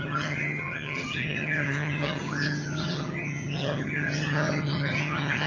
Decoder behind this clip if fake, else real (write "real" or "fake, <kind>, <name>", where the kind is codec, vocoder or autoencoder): fake, vocoder, HiFi-GAN